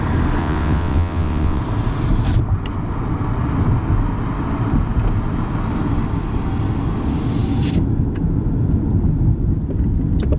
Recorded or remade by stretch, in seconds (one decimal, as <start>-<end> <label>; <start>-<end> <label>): 0.0-0.4 recorded; 0.4-1.6 remade; 1.6-10.4 recorded